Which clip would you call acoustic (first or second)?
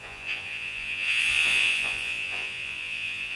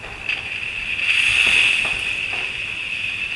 second